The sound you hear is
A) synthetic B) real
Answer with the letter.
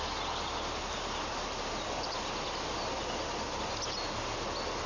B